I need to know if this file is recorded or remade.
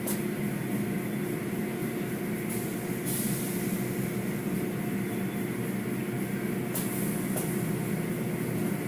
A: recorded